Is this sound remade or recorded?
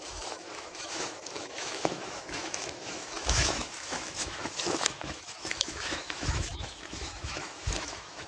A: remade